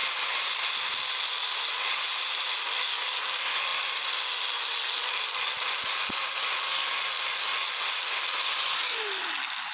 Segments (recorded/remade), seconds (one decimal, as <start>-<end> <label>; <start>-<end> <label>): 0.0-9.7 recorded

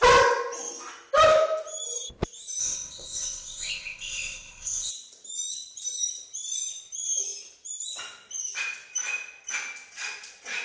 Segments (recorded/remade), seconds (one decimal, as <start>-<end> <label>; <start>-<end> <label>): 0.0-2.6 recorded; 2.6-4.9 remade; 4.9-10.6 recorded

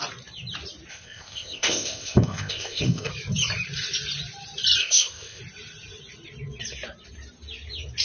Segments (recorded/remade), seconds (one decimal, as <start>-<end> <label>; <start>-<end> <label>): 0.0-0.9 recorded; 0.9-3.1 remade; 3.1-4.8 recorded; 4.8-5.4 remade; 5.4-8.0 recorded

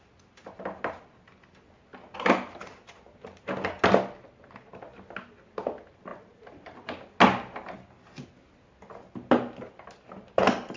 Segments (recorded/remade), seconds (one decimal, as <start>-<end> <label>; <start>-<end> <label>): 0.0-10.8 recorded